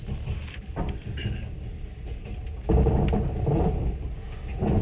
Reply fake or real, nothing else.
real